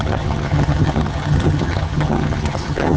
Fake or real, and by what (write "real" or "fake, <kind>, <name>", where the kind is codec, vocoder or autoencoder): fake, vocoder, HiFi-GAN